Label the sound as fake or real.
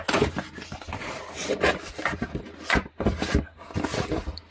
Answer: real